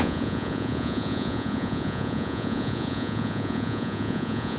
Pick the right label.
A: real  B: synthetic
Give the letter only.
B